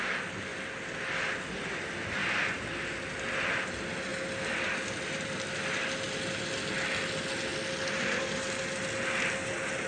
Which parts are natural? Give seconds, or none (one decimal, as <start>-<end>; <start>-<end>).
0.0-9.9

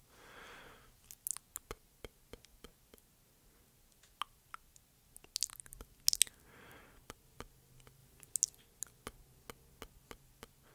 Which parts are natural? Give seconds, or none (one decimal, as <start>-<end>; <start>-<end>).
0.0-10.7

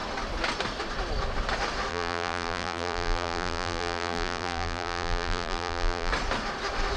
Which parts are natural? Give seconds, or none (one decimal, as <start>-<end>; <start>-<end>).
0.0-1.9; 6.1-7.0

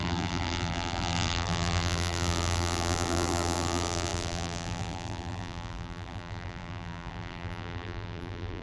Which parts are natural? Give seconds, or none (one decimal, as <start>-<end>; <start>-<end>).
none

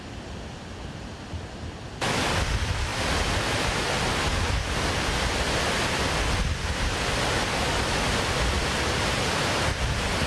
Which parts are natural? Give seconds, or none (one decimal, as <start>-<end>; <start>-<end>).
0.0-10.3